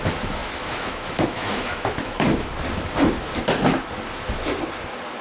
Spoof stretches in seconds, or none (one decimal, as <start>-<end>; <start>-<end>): 0.4-2.5